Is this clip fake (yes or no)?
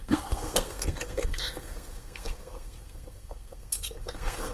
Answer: yes